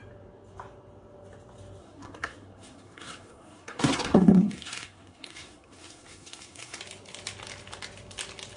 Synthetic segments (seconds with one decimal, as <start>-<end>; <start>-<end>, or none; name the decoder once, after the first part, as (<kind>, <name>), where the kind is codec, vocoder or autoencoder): 1.8-6.8 (codec, SNAC)